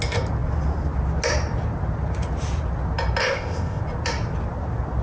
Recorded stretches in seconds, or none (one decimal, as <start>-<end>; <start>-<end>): 0.0-3.2; 3.8-5.0